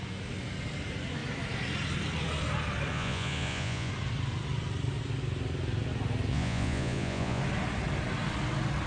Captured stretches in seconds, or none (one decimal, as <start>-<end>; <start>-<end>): 0.0-2.9; 3.9-6.3; 7.4-8.9